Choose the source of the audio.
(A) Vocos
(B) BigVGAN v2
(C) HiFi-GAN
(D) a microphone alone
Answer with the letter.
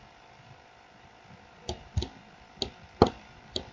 D